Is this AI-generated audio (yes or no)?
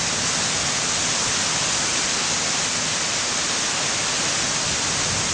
no